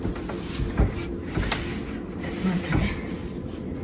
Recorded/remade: recorded